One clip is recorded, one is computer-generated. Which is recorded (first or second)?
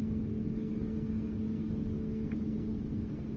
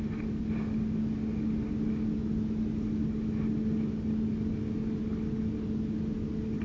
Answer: second